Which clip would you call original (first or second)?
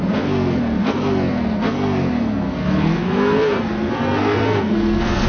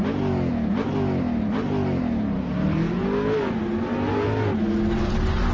second